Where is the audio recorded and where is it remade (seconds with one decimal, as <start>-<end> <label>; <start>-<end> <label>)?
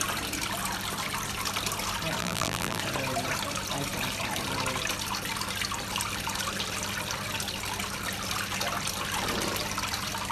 0.0-2.2 recorded; 2.2-2.8 remade; 2.8-10.3 recorded